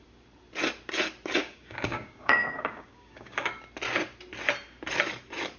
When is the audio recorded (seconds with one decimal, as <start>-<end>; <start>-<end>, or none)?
0.0-1.4; 3.5-5.6